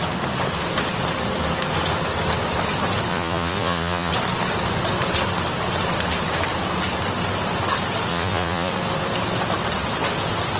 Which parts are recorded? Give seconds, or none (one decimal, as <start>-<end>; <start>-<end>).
0.0-3.1; 4.1-8.1; 8.7-10.6